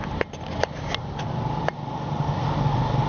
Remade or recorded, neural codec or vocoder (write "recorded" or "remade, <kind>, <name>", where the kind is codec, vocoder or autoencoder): recorded